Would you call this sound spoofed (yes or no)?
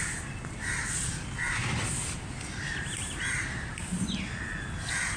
no